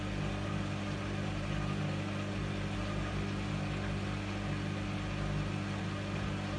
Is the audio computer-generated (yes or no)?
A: no